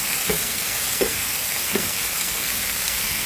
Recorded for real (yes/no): no